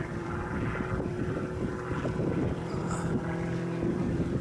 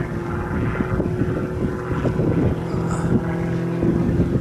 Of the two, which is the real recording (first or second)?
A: second